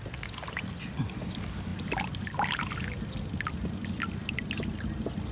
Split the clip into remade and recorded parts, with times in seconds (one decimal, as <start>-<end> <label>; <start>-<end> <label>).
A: 0.0-5.3 recorded